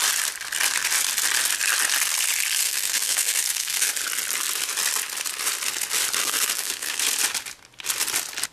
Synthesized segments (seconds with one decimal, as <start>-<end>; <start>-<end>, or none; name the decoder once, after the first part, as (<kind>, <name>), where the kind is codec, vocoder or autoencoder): 2.6-3.9 (codec, SNAC); 6.2-7.0